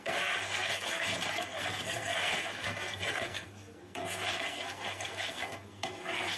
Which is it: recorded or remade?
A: remade